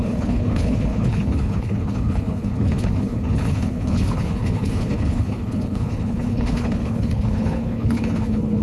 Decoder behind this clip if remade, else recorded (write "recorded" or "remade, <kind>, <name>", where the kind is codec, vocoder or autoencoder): remade, codec, HILCodec